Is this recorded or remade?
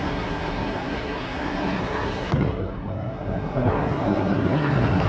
remade